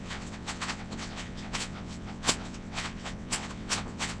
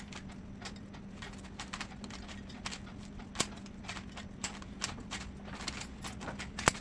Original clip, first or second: second